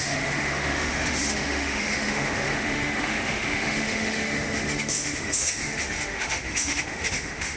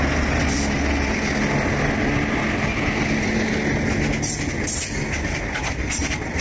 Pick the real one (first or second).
second